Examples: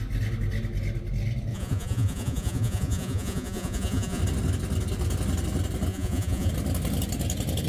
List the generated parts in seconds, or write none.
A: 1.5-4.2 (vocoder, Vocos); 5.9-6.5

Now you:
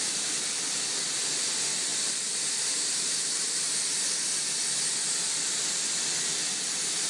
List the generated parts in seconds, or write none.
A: 1.9-3.7 (vocoder, BigVGAN v2)

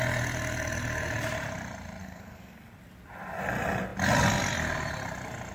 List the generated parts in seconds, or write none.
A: 2.0-2.7 (codec, SNAC)

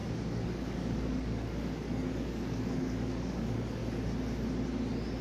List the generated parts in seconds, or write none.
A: 0.0-3.8 (codec, DAC)